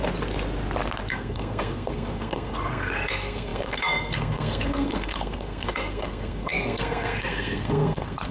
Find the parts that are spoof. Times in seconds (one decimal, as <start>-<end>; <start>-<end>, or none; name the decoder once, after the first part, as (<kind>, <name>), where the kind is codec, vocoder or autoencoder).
1.1-8.3 (codec, SNAC)